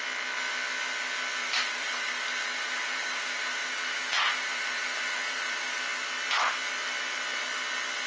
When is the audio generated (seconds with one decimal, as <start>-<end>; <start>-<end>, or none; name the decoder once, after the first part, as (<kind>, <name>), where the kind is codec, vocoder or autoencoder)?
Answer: 1.4-5.8 (vocoder, BigVGAN v2)